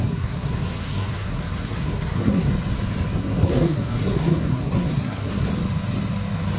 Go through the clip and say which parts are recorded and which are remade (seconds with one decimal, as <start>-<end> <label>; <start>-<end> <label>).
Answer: 0.0-2.5 remade; 2.5-3.2 recorded; 3.2-5.5 remade; 5.5-6.6 recorded